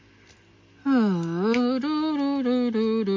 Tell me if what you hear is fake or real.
real